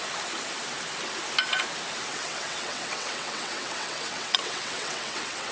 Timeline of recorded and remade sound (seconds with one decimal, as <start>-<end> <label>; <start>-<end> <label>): 0.0-2.1 recorded; 2.1-5.5 remade